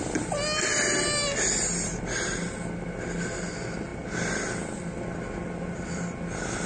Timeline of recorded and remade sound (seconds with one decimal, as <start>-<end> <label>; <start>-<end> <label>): 0.0-6.7 recorded